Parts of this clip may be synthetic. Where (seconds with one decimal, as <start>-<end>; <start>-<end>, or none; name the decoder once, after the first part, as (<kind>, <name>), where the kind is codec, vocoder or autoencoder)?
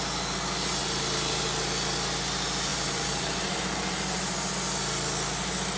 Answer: 0.8-1.4 (vocoder, BigVGAN v2); 2.7-4.5